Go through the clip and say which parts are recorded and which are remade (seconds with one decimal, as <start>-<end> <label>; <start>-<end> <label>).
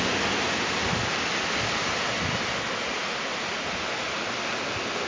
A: 0.0-5.1 recorded